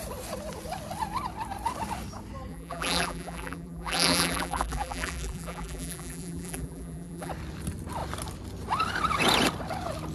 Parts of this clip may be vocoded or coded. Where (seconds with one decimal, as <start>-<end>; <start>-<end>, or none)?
2.5-7.3